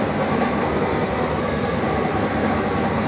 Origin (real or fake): fake